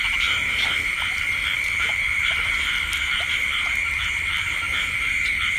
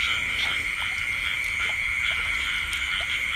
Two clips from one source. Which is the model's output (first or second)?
first